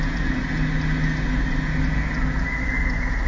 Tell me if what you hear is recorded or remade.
recorded